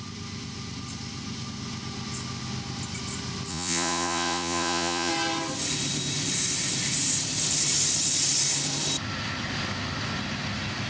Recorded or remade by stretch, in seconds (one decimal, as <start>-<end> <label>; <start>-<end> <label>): 0.0-3.5 recorded; 3.5-5.1 remade; 5.1-10.9 recorded

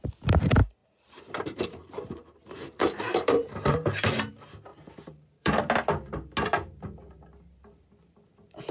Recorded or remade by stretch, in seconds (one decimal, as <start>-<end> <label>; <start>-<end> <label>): 0.0-0.8 recorded; 0.8-4.3 remade; 4.3-4.7 recorded; 4.7-5.6 remade; 5.6-8.7 recorded